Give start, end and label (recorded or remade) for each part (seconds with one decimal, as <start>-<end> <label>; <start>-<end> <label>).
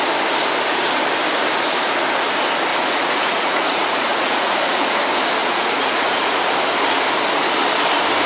0.0-2.7 recorded; 2.7-4.9 remade; 4.9-5.4 recorded; 5.4-6.5 remade; 6.5-8.3 recorded